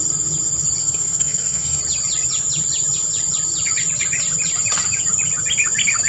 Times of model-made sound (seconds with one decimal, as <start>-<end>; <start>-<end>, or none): 0.8-1.8